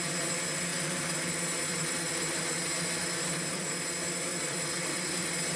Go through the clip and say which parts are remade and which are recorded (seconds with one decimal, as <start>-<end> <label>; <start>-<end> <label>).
0.0-0.7 recorded; 0.7-2.4 remade; 2.4-3.0 recorded; 3.0-3.7 remade; 3.7-4.3 recorded; 4.3-5.6 remade